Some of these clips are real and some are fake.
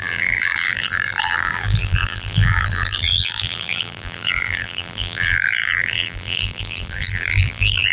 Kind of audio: fake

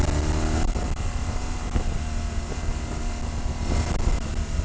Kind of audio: real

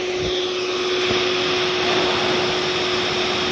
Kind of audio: real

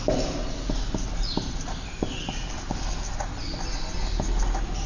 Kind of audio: real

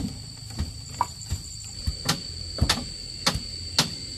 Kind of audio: real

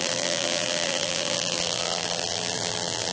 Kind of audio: fake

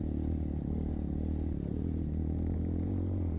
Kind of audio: fake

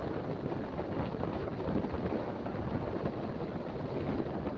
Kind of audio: real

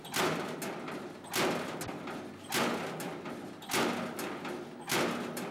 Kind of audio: real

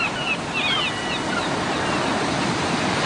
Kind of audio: real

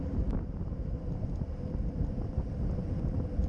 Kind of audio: real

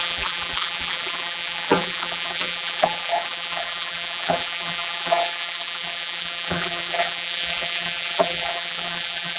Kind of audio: fake